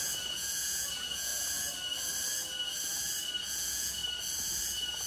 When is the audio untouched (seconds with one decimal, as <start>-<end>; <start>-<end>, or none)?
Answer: 1.3-3.5; 4.0-5.1

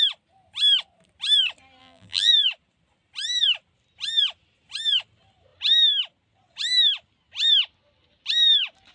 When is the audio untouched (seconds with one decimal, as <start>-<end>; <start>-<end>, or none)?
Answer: 0.0-1.8; 2.3-8.9

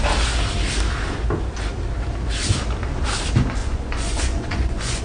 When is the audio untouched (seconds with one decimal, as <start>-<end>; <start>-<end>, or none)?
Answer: 0.0-3.6

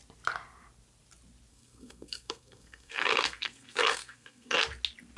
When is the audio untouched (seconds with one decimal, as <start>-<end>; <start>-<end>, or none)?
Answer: 0.0-1.5; 4.6-5.2

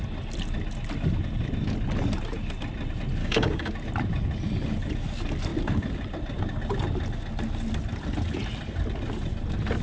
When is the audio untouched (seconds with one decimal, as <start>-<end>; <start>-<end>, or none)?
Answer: 0.0-3.2; 3.7-9.8

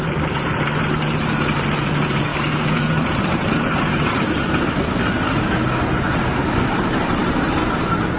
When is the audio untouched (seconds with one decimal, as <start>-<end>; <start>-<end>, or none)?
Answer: 5.6-6.6